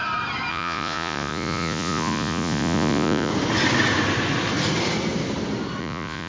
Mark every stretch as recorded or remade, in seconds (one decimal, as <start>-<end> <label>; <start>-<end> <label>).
0.0-0.5 recorded; 0.5-3.3 remade; 3.3-5.8 recorded; 5.8-6.3 remade